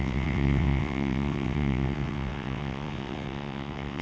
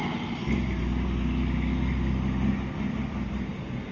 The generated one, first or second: first